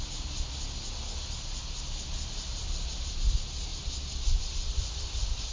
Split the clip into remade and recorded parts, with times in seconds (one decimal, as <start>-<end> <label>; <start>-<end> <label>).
0.0-5.5 recorded